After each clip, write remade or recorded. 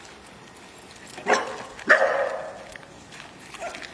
recorded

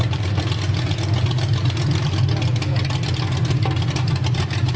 recorded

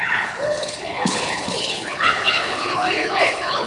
remade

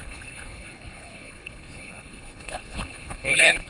remade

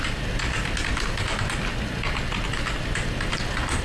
recorded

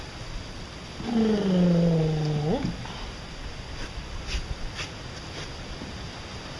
recorded